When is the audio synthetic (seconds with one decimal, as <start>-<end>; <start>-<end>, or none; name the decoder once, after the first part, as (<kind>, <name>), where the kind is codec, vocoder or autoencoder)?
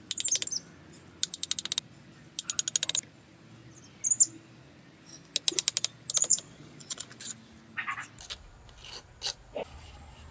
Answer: 6.2-7.3 (vocoder, Vocos)